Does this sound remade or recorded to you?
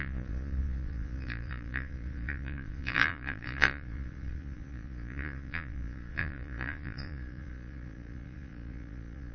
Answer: remade